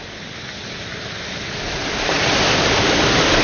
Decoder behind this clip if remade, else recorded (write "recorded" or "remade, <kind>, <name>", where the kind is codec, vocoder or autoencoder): recorded